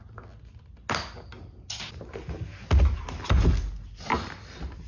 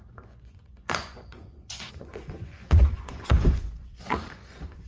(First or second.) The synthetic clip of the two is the second